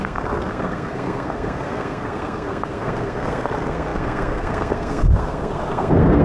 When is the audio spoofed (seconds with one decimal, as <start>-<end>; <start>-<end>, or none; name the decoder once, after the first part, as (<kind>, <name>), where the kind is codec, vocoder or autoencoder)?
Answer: 0.0-6.2 (codec, SNAC)